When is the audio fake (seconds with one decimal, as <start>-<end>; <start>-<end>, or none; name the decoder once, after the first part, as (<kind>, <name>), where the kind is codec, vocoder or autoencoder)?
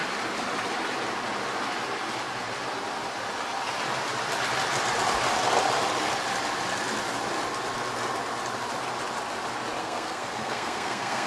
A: 9.8-11.3 (codec, SNAC)